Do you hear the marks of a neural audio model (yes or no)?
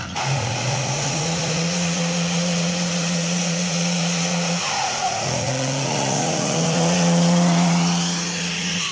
yes